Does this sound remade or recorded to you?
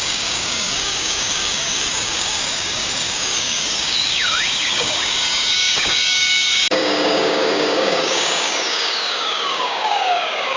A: remade